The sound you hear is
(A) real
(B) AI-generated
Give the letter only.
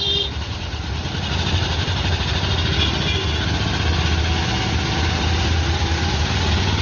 A